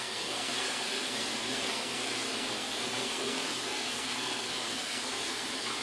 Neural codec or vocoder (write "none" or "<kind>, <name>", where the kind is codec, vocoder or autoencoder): codec, SNAC